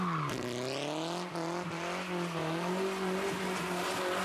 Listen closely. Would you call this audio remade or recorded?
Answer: recorded